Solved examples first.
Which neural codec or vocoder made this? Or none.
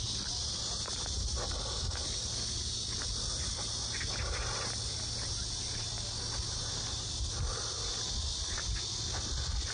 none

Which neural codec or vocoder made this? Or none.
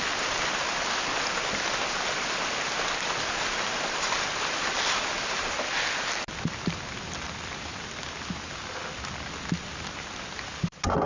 none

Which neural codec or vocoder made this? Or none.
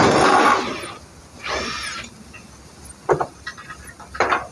none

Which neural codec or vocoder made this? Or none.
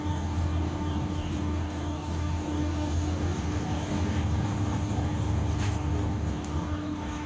codec, DAC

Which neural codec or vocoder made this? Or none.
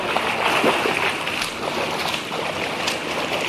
none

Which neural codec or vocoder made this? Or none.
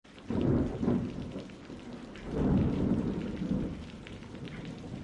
vocoder, BigVGAN v2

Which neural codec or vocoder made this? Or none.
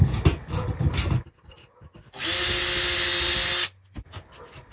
none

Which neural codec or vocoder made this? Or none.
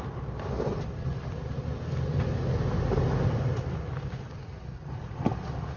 none